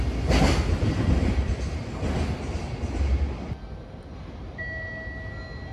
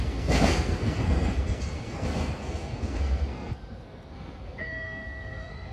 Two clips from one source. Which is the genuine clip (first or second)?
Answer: first